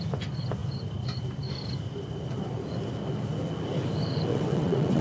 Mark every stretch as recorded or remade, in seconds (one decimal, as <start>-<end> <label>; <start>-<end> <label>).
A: 0.0-4.3 recorded; 4.3-5.0 remade